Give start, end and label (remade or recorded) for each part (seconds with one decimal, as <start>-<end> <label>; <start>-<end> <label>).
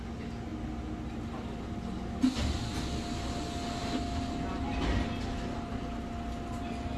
0.0-7.0 recorded